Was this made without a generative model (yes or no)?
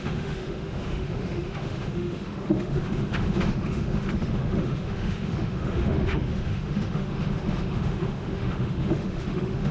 no